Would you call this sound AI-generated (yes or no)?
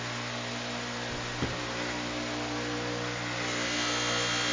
no